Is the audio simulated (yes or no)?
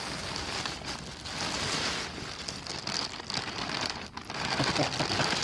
no